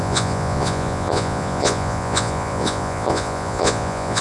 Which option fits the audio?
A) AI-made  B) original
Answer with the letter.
A